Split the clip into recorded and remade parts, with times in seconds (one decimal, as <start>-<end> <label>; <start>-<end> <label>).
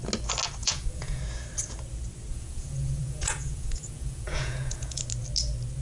0.0-0.6 recorded; 0.6-1.2 remade; 1.2-2.3 recorded; 2.3-5.0 remade; 5.0-5.8 recorded